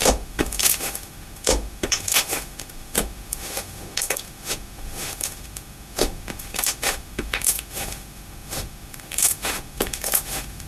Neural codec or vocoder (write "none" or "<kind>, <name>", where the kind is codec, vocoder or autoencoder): autoencoder, DAC-VAE